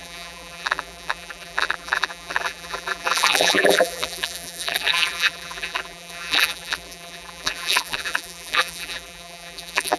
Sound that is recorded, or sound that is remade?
remade